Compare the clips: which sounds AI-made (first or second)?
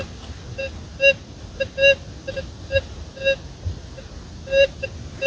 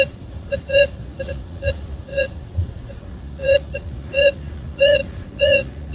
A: second